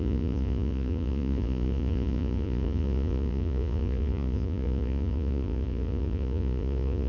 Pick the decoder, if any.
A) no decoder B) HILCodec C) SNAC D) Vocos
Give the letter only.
D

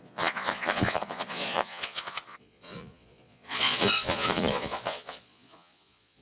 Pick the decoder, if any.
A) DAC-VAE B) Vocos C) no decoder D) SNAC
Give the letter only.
B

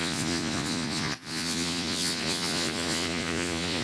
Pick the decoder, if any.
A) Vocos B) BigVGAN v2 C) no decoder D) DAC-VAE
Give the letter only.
A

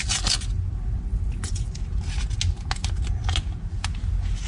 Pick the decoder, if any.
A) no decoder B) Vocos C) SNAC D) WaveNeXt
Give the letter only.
A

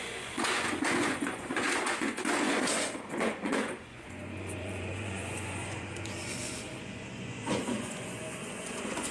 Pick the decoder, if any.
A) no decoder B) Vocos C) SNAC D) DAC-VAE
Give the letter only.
B